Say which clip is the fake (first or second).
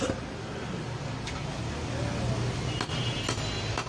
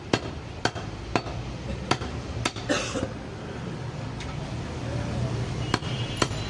second